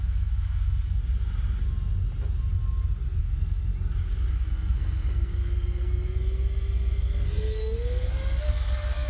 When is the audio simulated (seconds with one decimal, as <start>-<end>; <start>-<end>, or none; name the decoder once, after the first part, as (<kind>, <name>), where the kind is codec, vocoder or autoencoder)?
0.0-1.0 (codec, SNAC); 3.2-3.7; 4.3-9.1